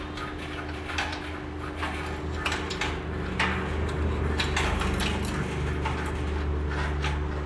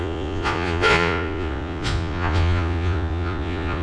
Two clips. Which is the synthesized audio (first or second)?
second